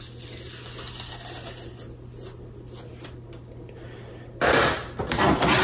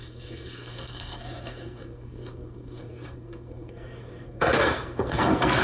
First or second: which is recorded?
first